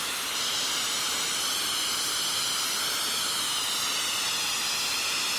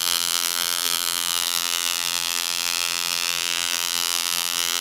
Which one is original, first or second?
first